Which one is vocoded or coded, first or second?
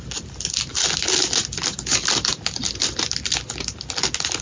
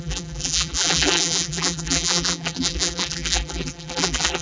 second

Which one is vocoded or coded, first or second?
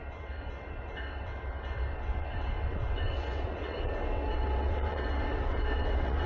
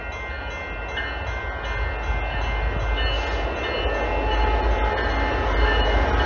first